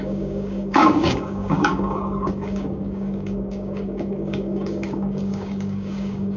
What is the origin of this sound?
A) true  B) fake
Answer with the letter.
B